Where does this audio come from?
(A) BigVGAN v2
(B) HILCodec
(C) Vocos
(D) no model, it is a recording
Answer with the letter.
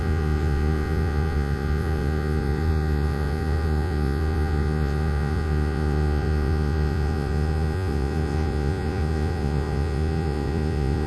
C